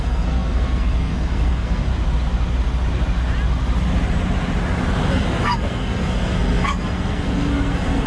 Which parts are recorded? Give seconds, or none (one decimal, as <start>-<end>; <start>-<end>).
1.9-5.1

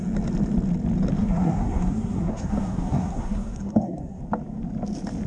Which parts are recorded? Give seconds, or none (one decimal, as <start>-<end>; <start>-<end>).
0.0-1.2; 4.2-5.3